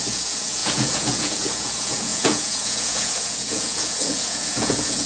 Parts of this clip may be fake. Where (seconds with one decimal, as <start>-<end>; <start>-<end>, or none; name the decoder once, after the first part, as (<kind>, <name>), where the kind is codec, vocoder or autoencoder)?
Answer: 0.0-5.1 (vocoder, Vocos)